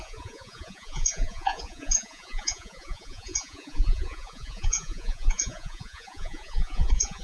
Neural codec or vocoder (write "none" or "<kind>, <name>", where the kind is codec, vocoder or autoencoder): vocoder, Vocos